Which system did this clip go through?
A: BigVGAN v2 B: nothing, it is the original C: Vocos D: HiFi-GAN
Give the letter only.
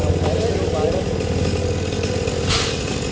B